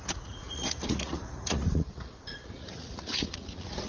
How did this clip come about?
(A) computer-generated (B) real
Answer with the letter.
A